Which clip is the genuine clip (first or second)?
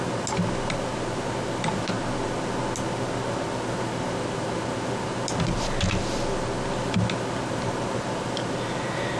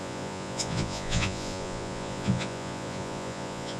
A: first